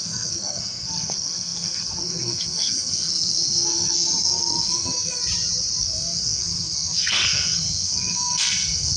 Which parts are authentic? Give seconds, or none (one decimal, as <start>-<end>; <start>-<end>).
5.2-5.8